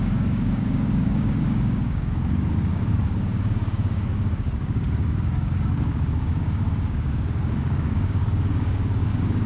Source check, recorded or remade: remade